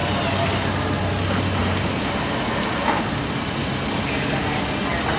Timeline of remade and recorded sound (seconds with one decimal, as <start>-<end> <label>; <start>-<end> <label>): 0.0-0.5 remade; 0.5-1.6 recorded; 1.6-4.4 remade; 4.4-5.2 recorded